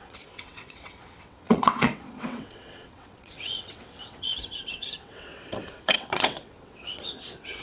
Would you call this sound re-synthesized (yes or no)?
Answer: yes